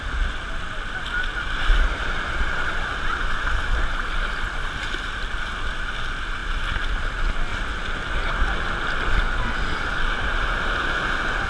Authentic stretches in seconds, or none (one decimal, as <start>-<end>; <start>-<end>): 0.0-2.0; 3.2-11.5